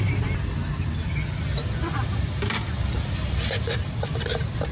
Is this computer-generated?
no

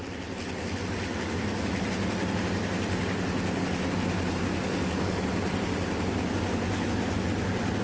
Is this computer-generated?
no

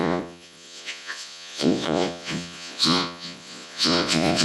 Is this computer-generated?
yes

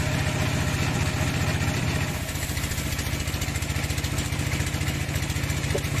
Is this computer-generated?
no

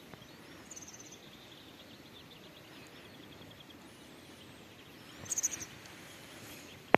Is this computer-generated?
no